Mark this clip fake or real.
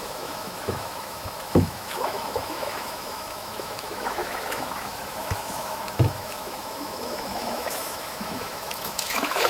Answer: fake